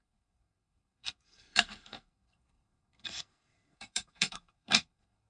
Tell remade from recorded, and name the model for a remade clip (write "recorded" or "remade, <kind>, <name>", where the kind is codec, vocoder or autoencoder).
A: remade, codec, SNAC